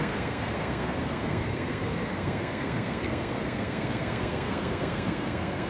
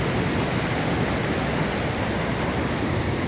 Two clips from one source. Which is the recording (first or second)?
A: second